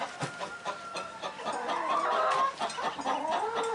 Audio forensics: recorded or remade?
recorded